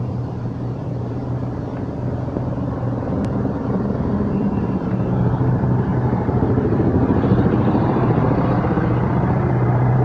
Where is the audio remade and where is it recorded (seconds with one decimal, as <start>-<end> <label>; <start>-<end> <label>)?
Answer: 0.0-1.2 remade; 1.2-2.3 recorded; 2.3-5.9 remade; 5.9-6.4 recorded; 6.4-10.0 remade